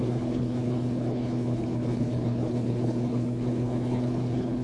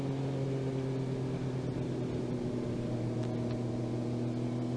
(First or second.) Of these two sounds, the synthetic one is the first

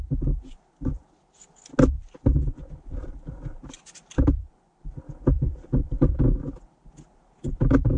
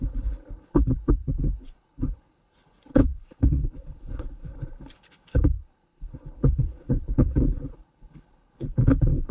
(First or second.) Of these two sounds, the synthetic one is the second